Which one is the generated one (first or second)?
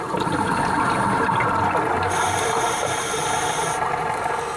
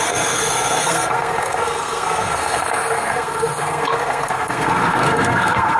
second